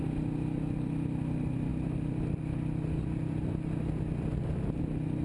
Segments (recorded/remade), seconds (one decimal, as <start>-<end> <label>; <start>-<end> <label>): 0.0-5.2 recorded